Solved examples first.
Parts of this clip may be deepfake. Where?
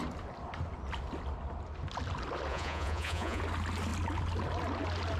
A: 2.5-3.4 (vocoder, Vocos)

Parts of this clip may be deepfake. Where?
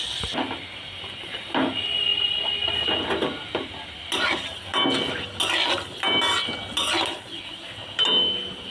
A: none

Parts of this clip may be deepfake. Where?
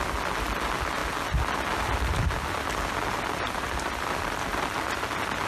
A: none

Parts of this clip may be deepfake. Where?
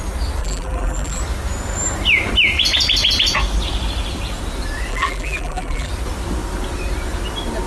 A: 0.4-1.2 (vocoder, BigVGAN v2); 4.9-5.9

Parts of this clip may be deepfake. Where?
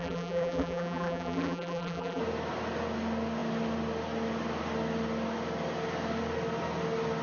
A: 0.0-2.2 (vocoder, BigVGAN v2)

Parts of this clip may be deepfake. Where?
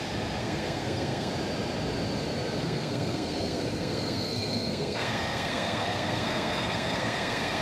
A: 0.4-1.3 (codec, SNAC); 2.6-7.6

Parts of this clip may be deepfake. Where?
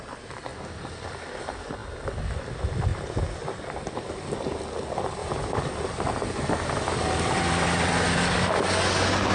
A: 5.2-8.5 (vocoder, BigVGAN v2)